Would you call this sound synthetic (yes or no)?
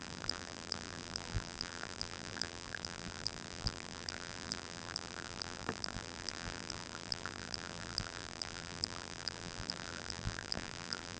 yes